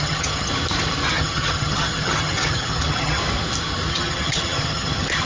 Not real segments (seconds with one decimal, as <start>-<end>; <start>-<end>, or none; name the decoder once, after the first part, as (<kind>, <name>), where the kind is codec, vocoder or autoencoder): 0.0-0.5 (vocoder, HiFi-GAN); 1.1-3.2; 3.9-5.3